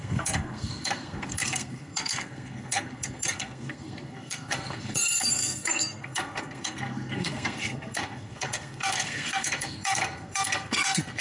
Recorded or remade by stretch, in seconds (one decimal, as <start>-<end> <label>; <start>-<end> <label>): 0.0-11.2 remade